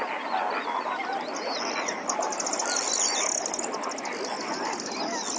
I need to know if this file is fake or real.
real